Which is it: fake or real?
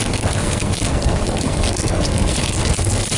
fake